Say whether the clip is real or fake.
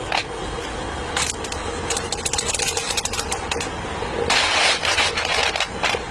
real